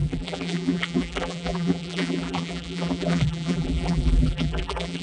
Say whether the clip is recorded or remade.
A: remade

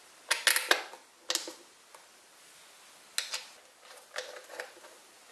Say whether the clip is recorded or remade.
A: recorded